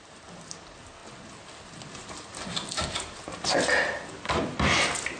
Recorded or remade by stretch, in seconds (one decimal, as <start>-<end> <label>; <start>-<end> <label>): 0.0-5.2 recorded